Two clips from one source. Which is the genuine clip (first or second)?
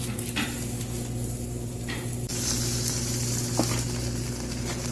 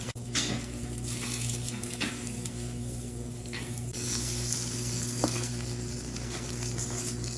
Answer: first